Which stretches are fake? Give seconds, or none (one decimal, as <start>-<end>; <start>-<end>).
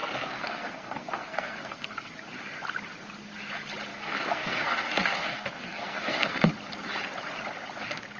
0.0-2.1; 3.9-6.5